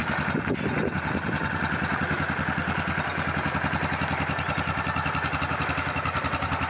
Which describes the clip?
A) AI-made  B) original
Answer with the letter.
B